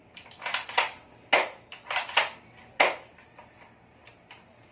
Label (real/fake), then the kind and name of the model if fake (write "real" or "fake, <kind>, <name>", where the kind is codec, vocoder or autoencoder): real